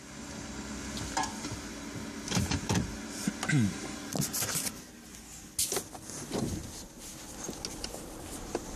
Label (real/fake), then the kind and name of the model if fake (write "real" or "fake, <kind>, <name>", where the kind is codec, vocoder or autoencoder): real